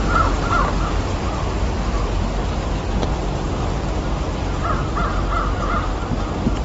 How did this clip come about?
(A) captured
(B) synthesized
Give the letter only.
A